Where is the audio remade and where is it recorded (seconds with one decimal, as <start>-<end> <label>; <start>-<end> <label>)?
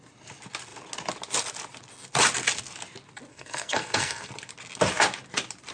0.0-3.3 recorded; 3.3-4.3 remade; 4.3-5.7 recorded